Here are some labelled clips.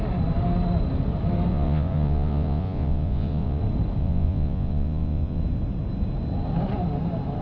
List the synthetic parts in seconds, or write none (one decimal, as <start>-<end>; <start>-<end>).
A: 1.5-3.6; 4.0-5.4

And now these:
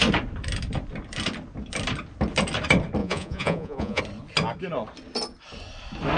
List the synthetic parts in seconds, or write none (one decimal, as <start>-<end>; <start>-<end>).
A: 3.0-4.0

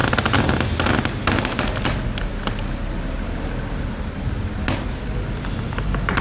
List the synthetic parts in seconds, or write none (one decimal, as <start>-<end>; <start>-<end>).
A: none